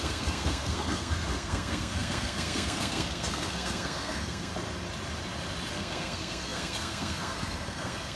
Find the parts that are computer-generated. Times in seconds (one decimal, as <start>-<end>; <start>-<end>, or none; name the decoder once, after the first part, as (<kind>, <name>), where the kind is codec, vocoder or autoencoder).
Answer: 0.0-4.5 (codec, SNAC); 5.7-8.2